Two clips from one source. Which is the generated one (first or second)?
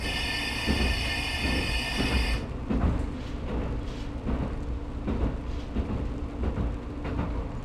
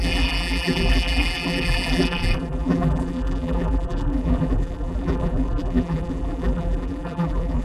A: second